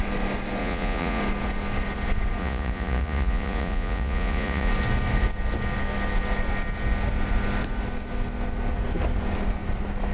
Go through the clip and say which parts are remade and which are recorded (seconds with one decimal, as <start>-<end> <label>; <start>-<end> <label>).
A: 0.0-0.6 recorded; 0.6-1.2 remade; 1.2-2.4 recorded; 2.4-4.7 remade; 4.7-10.1 recorded